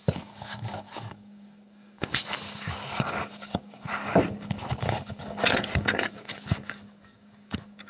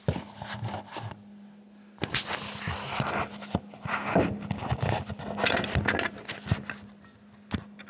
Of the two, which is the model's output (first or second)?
first